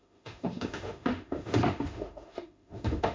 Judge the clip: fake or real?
fake